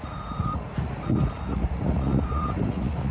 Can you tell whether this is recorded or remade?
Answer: remade